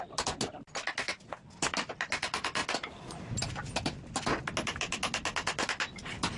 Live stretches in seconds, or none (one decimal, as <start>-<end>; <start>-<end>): 0.0-6.4